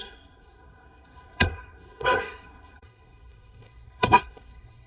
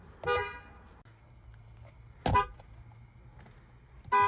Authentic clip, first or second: second